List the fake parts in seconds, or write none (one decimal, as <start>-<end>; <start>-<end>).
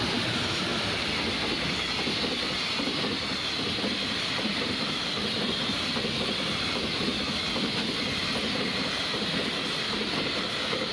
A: 0.0-0.7; 4.4-7.1; 8.7-10.9